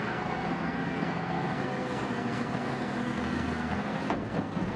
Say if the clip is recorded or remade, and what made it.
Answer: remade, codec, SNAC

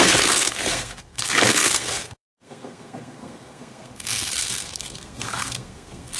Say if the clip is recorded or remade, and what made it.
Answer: remade, codec, SNAC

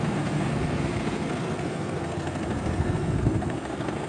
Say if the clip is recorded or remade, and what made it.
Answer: remade, codec, SNAC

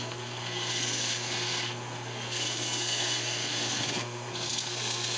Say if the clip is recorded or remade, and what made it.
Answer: remade, codec, SNAC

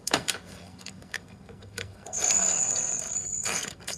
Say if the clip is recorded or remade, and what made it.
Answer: remade, codec, SNAC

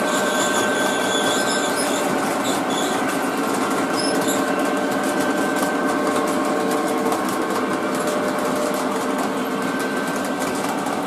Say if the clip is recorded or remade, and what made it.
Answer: recorded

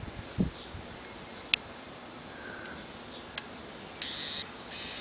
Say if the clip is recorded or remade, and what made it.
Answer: recorded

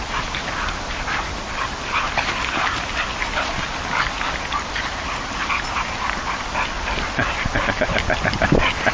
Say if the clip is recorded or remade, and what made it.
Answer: recorded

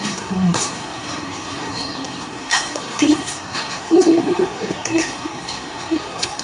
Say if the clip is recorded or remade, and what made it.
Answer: remade, codec, SNAC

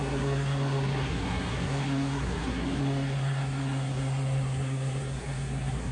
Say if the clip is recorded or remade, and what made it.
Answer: remade, codec, SNAC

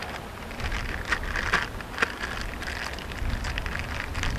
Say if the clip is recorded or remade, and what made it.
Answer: recorded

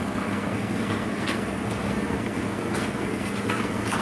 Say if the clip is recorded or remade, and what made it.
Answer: remade, codec, SNAC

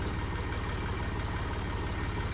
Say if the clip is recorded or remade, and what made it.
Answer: recorded